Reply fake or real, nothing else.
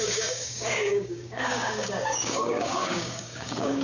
fake